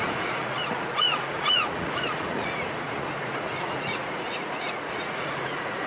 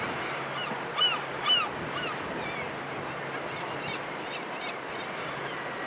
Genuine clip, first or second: second